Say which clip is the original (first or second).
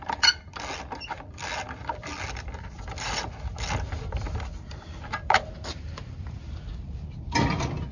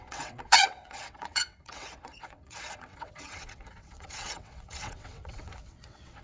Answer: first